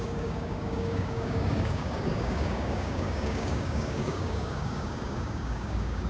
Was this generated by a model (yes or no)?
yes